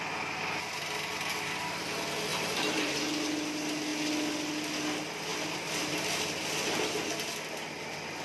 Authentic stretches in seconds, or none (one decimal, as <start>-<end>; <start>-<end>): 0.0-2.3; 2.9-8.2